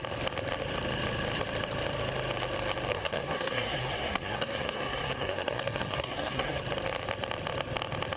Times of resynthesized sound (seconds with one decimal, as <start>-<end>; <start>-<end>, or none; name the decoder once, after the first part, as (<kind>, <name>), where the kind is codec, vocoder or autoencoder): 2.9-6.6 (codec, SNAC)